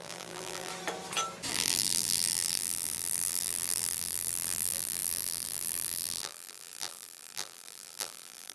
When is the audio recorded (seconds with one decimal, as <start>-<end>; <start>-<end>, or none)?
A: 0.7-1.5